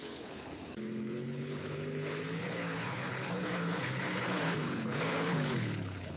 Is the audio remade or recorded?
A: remade